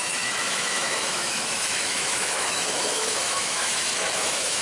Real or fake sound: fake